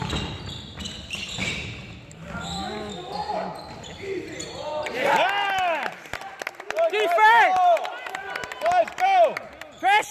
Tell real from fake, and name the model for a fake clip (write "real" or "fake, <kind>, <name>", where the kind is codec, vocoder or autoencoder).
real